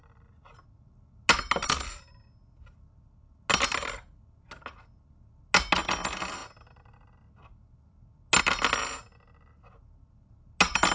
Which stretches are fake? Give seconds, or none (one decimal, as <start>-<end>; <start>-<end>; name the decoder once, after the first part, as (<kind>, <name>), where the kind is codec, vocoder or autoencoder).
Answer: none